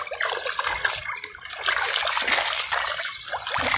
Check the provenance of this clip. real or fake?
real